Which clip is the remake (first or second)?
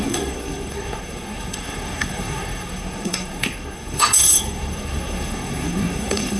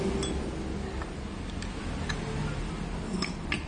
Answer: first